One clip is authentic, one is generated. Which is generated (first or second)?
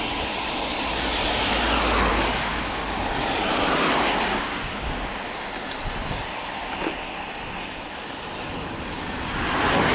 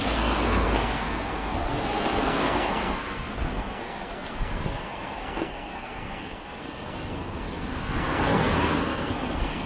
second